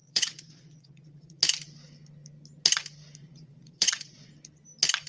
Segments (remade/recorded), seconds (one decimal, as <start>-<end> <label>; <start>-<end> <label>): 0.0-1.4 remade; 1.4-3.2 recorded; 3.2-4.3 remade; 4.3-5.1 recorded